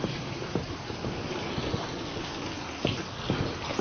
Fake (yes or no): no